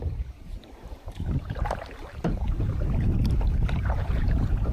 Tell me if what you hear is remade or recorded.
remade